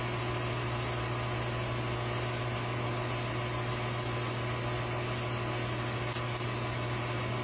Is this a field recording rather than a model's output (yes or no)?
yes